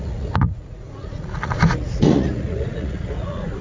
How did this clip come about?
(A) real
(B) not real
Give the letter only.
B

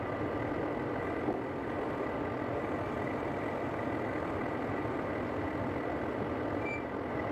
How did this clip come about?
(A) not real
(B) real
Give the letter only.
B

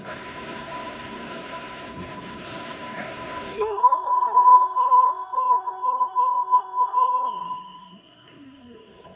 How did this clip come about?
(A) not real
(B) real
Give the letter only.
A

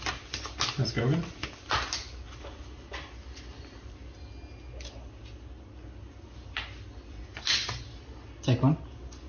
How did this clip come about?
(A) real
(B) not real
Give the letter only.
A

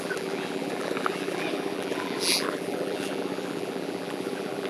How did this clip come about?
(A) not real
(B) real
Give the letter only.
A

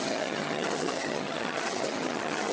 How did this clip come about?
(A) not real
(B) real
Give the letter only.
A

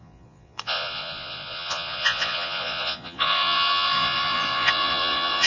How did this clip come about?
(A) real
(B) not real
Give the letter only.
B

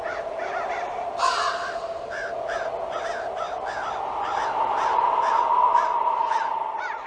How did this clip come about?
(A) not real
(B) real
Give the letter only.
B